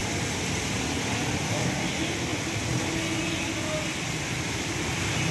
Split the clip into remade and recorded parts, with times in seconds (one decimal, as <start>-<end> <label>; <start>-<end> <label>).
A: 0.0-5.3 recorded